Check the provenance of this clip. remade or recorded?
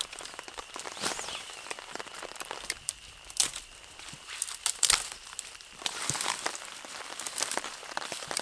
remade